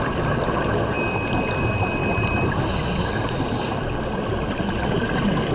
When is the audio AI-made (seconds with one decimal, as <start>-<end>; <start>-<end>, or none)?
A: none